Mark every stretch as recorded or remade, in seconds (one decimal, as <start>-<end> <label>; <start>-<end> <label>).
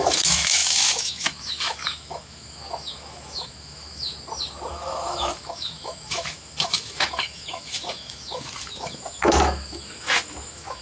0.0-4.1 remade; 4.1-4.7 recorded; 4.7-10.8 remade